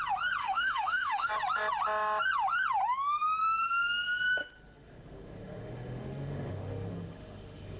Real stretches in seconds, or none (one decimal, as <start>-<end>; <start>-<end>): 0.0-0.4; 1.3-4.4